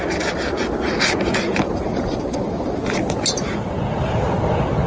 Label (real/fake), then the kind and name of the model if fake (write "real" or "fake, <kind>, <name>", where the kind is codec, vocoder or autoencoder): real